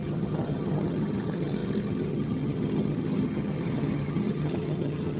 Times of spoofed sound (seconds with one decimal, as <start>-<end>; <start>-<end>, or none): 0.0-5.2